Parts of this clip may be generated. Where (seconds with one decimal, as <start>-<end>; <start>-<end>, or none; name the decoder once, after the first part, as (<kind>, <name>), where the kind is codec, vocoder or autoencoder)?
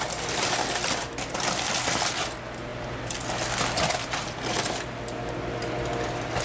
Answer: none